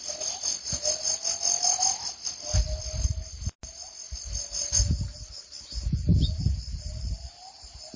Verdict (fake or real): real